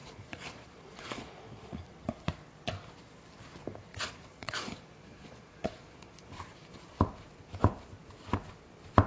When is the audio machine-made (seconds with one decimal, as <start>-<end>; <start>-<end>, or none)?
0.0-1.9; 3.9-6.3